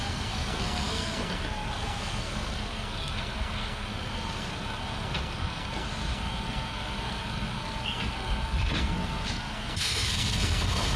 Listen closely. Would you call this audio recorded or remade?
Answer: remade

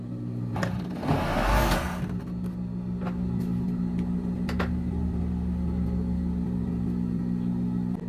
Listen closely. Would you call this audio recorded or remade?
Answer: recorded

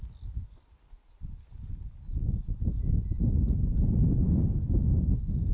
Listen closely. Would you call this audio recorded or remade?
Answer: recorded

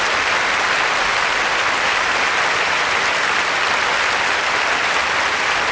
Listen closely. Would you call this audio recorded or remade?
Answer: recorded